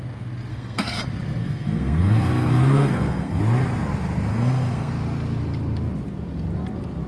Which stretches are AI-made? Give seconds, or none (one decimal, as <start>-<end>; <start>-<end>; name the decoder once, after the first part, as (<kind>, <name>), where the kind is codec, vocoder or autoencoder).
0.5-1.0 (codec, SNAC); 1.4-3.4; 4.3-4.9